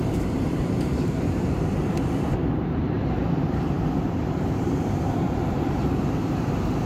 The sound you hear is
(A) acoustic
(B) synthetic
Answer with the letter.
B